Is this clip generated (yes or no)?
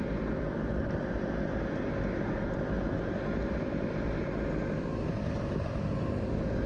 no